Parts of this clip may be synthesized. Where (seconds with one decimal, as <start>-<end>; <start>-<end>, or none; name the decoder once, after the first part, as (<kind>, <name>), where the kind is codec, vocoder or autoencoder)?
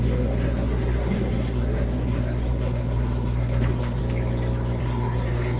0.0-4.0 (codec, SNAC); 4.8-5.6